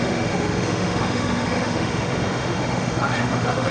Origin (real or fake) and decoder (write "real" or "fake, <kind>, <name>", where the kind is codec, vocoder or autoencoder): fake, autoencoder, DAC-VAE